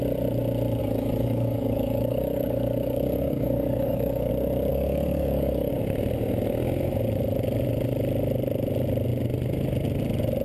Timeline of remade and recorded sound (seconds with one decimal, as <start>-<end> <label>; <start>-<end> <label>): 0.0-0.8 recorded; 0.8-4.3 remade; 4.3-4.7 recorded; 4.7-5.7 remade; 5.7-10.4 recorded